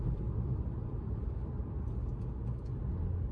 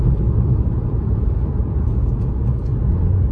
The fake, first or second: second